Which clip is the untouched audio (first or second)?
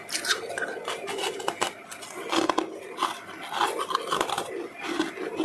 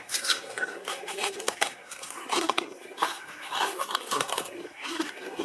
first